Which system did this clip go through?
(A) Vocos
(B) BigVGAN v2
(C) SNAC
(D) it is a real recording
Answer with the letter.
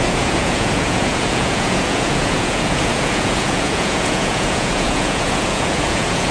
A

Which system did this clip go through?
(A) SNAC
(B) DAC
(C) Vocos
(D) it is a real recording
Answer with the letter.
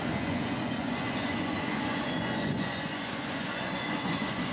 C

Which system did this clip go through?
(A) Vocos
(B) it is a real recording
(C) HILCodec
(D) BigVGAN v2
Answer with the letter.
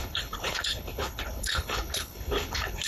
C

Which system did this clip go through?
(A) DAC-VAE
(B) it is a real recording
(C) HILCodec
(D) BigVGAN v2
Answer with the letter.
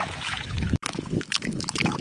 A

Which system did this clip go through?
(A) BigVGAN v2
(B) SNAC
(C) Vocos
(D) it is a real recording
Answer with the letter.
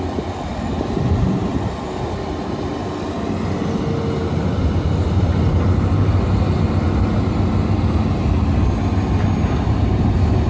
D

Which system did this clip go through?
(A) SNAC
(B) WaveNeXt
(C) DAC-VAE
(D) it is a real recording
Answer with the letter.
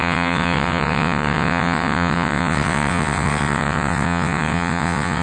B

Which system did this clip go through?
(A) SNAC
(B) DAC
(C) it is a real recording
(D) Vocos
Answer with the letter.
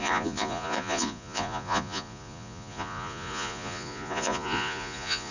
D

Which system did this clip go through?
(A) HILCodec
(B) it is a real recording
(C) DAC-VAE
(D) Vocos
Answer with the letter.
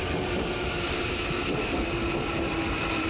B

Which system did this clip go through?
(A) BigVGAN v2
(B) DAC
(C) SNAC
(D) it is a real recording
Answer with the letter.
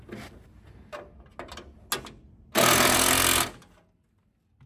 D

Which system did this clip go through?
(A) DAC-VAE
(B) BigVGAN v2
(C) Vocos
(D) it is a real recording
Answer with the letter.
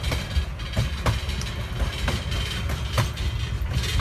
B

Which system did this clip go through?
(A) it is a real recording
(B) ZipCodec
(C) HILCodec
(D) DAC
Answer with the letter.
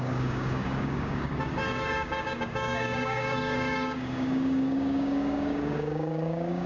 D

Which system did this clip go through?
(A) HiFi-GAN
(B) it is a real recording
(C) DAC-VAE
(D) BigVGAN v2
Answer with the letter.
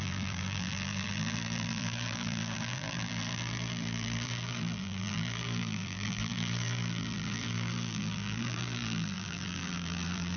D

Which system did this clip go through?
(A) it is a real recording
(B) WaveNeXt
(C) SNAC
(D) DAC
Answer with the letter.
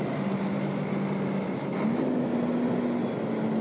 A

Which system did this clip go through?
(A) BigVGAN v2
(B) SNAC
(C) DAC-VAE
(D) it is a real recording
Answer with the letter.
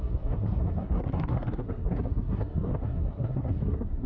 B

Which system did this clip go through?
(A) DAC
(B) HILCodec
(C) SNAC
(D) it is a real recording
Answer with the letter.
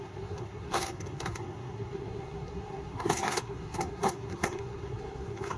C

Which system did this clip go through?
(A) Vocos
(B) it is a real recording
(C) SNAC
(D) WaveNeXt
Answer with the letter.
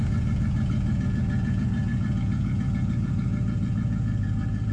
A